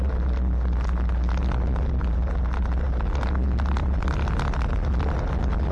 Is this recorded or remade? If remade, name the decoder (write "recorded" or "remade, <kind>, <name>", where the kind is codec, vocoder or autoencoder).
recorded